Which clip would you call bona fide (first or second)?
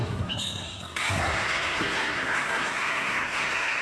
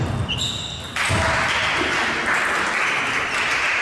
second